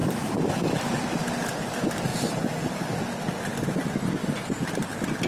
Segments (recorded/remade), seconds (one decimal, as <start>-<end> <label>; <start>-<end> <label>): 0.0-0.9 remade; 0.9-2.1 recorded; 2.1-2.8 remade; 2.8-5.3 recorded